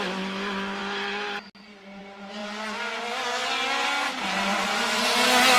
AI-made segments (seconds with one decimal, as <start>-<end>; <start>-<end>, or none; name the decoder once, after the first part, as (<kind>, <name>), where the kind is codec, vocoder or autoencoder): none